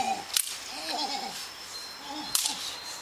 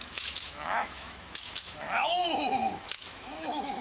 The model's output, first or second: second